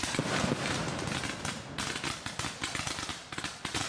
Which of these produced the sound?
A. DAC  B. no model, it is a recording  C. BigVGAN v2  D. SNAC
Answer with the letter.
B